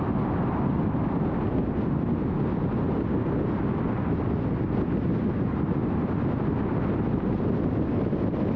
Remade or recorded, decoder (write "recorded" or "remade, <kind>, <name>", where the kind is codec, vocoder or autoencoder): recorded